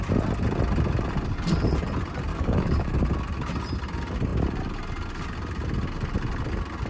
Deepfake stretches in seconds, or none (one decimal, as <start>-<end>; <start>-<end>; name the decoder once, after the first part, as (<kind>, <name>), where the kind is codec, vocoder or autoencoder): 2.3-3.0 (codec, DAC)